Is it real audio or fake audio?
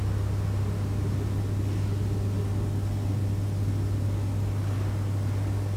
real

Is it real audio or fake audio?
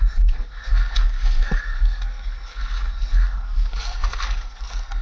fake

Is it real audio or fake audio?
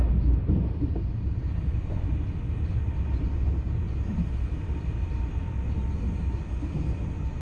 real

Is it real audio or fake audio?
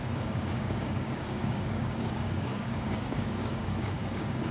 fake